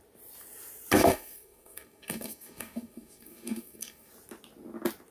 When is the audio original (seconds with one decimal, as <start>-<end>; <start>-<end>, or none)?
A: 0.0-1.0; 4.1-5.1